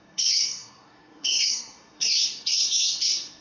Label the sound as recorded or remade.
remade